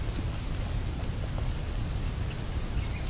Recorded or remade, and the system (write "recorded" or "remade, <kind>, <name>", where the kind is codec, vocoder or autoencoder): recorded